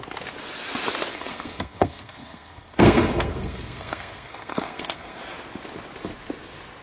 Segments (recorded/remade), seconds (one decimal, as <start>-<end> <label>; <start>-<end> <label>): 0.0-1.1 recorded; 1.1-5.2 remade; 5.2-6.8 recorded

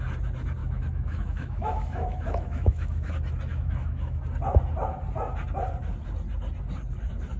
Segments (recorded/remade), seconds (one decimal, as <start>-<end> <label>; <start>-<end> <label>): 0.0-0.6 recorded; 0.6-3.1 remade; 3.1-3.5 recorded; 3.5-4.2 remade; 4.2-7.4 recorded

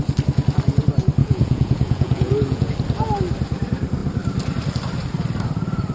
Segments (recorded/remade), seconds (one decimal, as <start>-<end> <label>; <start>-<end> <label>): 0.0-1.2 recorded; 1.2-2.7 remade; 2.7-5.9 recorded

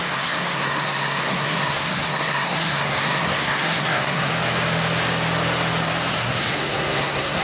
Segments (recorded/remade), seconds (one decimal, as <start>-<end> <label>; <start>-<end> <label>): 0.0-4.3 remade; 4.3-6.1 recorded; 6.1-7.4 remade

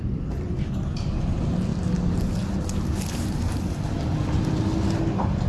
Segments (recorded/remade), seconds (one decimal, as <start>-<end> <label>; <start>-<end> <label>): 0.0-5.5 recorded